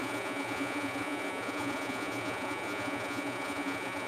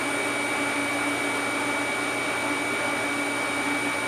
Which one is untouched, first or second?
second